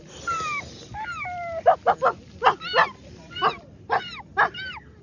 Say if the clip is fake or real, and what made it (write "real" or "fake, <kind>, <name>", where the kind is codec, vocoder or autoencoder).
real